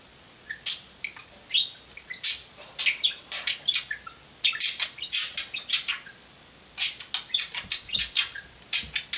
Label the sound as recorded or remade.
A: recorded